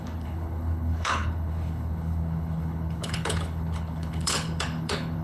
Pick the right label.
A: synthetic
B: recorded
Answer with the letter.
A